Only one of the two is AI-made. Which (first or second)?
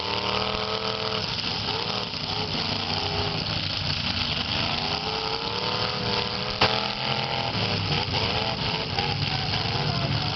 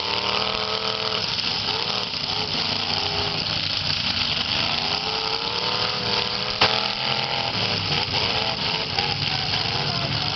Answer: second